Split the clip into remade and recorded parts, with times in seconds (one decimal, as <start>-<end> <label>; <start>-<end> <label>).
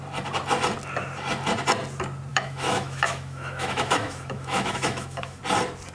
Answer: 0.0-2.3 recorded; 2.3-5.4 remade; 5.4-5.9 recorded